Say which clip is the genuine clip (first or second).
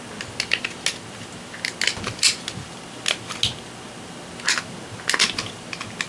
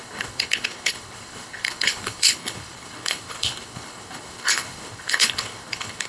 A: first